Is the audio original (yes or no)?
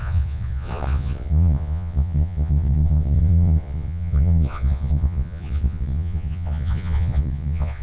no